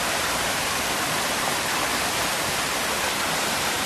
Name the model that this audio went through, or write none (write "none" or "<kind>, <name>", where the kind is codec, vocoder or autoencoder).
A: vocoder, BigVGAN v2